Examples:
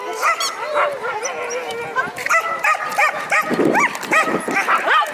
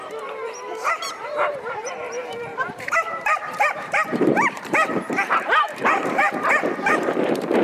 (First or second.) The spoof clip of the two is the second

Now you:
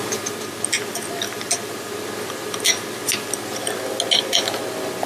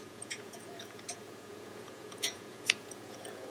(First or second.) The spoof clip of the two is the second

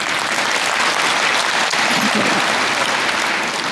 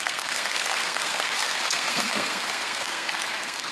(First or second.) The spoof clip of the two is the second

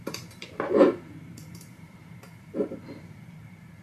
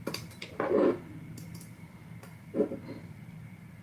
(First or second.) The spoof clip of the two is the first